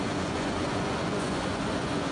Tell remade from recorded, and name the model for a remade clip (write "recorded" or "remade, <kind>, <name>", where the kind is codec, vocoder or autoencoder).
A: remade, vocoder, Vocos